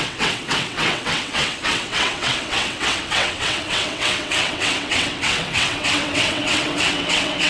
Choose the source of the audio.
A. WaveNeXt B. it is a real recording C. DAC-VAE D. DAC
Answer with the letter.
A